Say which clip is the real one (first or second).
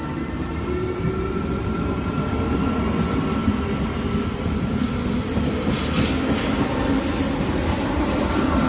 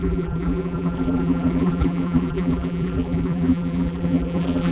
first